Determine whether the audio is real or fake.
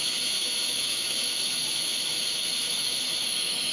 fake